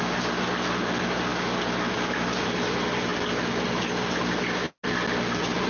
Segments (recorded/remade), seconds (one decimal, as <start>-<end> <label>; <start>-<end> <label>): 0.0-5.7 recorded